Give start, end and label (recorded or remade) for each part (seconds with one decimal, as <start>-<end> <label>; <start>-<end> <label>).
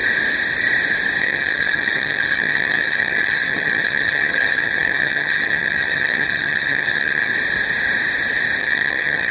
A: 0.0-1.2 recorded; 1.2-7.3 remade; 7.3-8.6 recorded; 8.6-9.3 remade